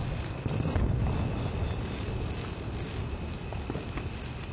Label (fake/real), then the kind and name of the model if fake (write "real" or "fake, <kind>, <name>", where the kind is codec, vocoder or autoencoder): real